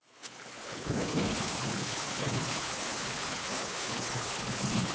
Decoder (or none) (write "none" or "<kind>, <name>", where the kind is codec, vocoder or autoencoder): codec, HILCodec